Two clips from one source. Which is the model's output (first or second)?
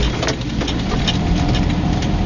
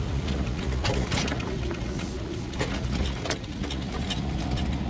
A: second